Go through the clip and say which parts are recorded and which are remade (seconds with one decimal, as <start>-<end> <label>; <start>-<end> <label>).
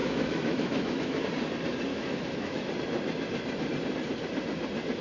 0.0-1.2 remade; 1.2-1.9 recorded; 1.9-2.7 remade; 2.7-5.0 recorded